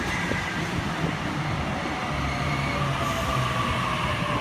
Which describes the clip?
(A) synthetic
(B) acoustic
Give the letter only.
A